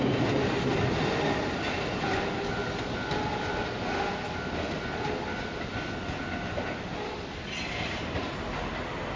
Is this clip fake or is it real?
real